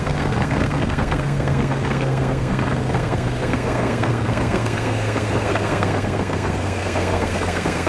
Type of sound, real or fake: fake